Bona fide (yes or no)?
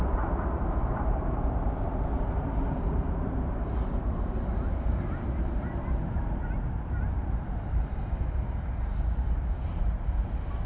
no